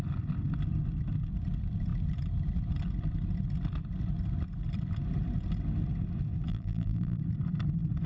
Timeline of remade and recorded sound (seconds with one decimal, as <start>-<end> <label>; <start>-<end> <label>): 0.0-6.5 recorded; 6.5-7.2 remade; 7.2-8.1 recorded